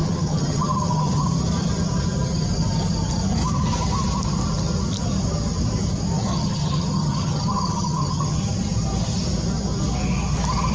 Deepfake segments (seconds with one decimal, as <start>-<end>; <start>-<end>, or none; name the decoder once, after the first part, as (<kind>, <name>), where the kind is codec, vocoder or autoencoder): 0.0-1.3 (vocoder, HiFi-GAN); 6.3-8.4